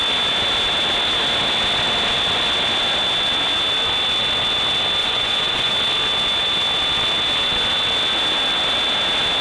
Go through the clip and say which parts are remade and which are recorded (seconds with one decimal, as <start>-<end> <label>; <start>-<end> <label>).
0.0-5.0 recorded; 5.0-5.7 remade; 5.7-9.4 recorded